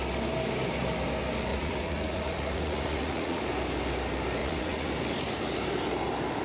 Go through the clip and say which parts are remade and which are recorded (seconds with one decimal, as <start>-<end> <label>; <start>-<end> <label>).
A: 0.0-1.5 recorded; 1.5-3.4 remade; 3.4-4.4 recorded; 4.4-4.9 remade; 4.9-6.4 recorded